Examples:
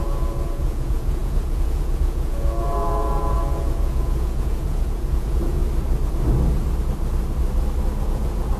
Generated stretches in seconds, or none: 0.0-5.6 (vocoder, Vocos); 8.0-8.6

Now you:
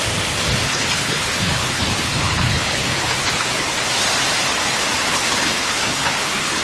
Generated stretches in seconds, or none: 0.7-3.9 (codec, HILCodec); 5.1-6.6